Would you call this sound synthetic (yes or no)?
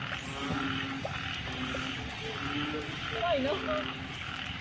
no